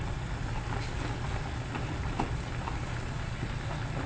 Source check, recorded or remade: recorded